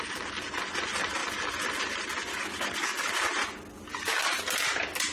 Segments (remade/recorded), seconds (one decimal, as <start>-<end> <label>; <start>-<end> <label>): 0.0-2.3 recorded; 2.3-3.1 remade; 3.1-5.1 recorded